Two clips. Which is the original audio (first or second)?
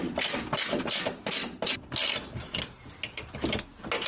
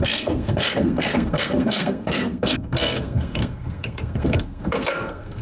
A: first